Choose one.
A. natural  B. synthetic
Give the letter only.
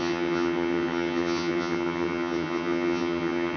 B